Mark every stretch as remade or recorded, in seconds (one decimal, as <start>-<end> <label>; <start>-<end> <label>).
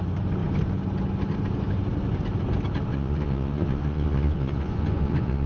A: 0.0-2.9 recorded; 2.9-5.5 remade